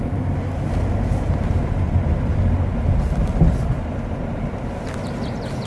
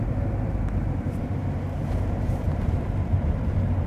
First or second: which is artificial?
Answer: second